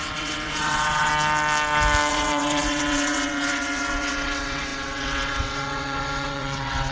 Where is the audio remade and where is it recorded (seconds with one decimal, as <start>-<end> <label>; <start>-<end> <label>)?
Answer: 0.0-1.1 remade; 1.1-2.1 recorded; 2.1-6.9 remade